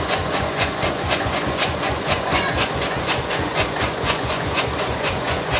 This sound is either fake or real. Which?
fake